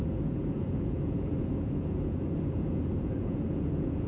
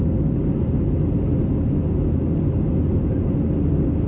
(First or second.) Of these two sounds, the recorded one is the second